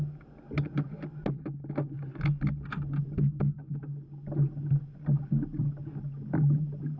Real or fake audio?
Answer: real